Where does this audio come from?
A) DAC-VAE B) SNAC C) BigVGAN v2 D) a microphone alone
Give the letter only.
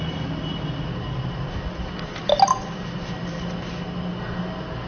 D